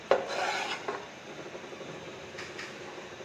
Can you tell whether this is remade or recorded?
recorded